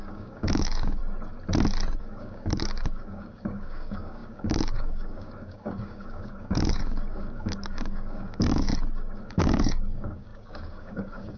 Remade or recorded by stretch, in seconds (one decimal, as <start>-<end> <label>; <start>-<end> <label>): 0.0-1.0 remade; 1.0-2.0 recorded; 2.0-8.7 remade; 8.7-9.2 recorded; 9.2-11.4 remade